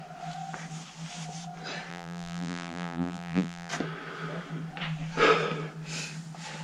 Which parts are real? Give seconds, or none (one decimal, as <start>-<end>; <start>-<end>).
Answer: 0.0-1.9; 3.7-6.6